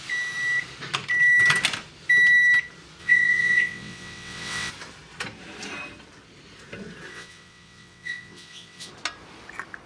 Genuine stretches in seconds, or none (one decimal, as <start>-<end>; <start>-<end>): 0.0-3.0; 4.7-7.1; 8.9-9.9